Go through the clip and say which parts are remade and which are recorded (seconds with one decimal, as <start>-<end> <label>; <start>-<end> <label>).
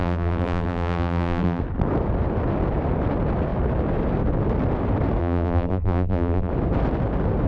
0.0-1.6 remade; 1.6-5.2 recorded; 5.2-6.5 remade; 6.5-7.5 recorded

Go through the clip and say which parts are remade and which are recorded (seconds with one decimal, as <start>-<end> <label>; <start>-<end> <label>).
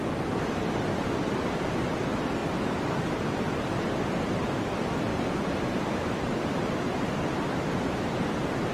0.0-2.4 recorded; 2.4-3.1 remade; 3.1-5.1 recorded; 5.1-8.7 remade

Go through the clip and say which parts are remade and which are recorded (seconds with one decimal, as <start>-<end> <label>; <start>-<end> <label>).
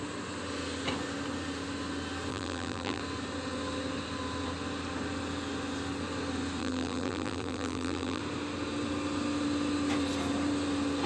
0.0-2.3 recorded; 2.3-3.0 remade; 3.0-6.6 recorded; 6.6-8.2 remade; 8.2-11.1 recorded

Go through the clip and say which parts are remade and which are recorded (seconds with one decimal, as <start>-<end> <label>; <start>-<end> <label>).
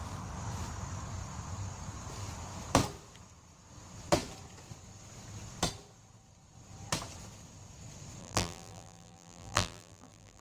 0.0-8.2 recorded; 8.2-10.4 remade